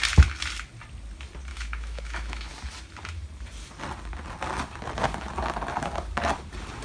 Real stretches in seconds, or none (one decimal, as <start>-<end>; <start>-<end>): 0.0-1.5; 2.5-6.8